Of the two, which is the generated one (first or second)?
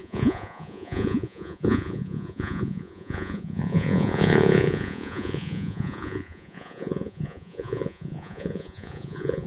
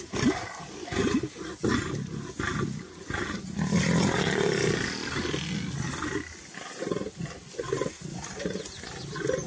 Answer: first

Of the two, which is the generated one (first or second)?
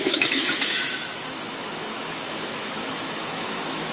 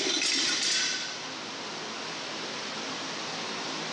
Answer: first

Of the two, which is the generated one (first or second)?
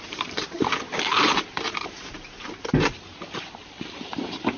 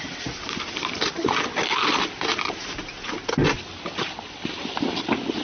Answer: first